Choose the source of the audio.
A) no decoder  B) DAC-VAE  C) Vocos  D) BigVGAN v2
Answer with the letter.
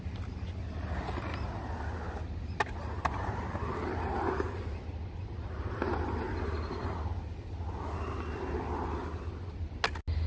A